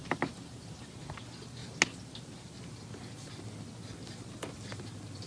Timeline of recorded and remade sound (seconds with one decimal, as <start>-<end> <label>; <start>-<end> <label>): 0.0-1.0 remade; 1.0-5.3 recorded